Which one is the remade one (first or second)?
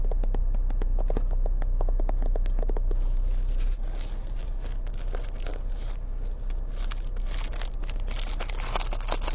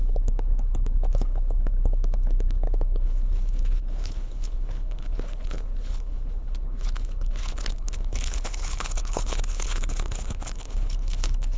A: second